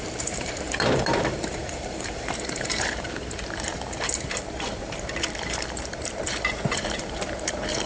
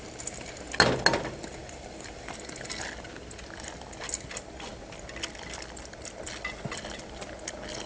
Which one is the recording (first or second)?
second